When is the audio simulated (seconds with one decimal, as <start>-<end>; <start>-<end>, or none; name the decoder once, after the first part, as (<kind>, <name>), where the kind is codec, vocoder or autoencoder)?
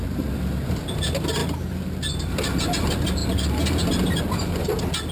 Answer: none